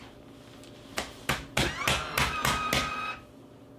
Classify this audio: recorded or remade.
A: recorded